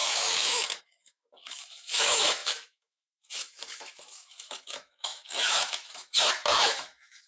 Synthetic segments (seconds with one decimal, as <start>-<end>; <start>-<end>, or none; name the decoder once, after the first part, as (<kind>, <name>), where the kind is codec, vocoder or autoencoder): 0.0-7.3 (autoencoder, DAC-VAE)